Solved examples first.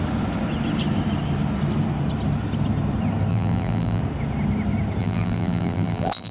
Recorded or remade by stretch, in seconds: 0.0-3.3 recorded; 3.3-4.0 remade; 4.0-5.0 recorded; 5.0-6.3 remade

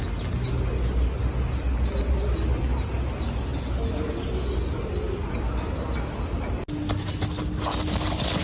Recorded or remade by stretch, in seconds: 0.0-8.4 recorded

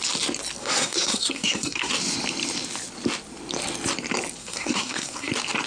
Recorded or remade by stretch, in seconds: 0.0-0.6 recorded; 0.6-1.9 remade; 1.9-4.4 recorded; 4.4-5.3 remade; 5.3-5.7 recorded

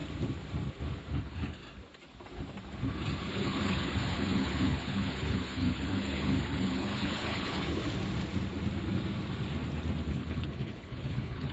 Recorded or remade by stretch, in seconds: 0.0-1.1 recorded; 1.1-1.6 remade; 1.6-3.3 recorded; 3.3-7.8 remade; 7.8-10.1 recorded; 10.1-11.5 remade